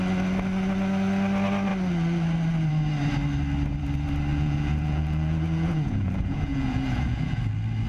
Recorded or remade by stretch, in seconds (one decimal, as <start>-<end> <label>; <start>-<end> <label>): 0.0-4.3 recorded; 4.3-7.4 remade; 7.4-7.9 recorded